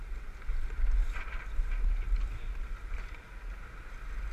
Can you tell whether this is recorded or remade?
recorded